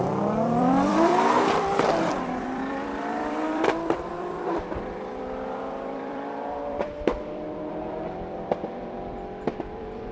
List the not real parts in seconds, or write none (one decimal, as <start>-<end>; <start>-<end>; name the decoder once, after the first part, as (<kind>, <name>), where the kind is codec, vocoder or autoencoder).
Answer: 0.0-1.1 (vocoder, BigVGAN v2); 2.1-10.1